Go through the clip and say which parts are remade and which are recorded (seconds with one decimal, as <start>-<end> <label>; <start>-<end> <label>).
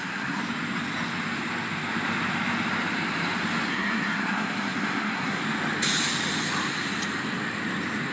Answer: 0.0-0.4 remade; 0.4-3.7 recorded; 3.7-5.4 remade; 5.4-8.1 recorded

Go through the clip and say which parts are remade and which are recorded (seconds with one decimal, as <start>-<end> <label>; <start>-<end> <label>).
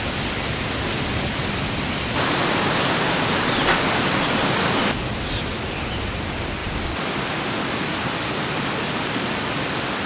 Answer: 0.0-10.1 recorded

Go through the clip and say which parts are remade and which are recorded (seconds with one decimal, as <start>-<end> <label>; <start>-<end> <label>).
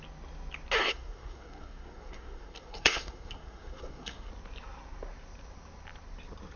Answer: 0.0-0.8 recorded; 0.8-4.3 remade; 4.3-6.6 recorded